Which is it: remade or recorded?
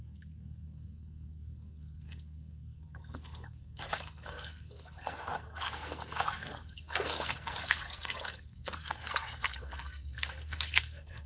remade